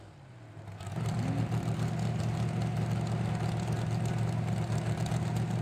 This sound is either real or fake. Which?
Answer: real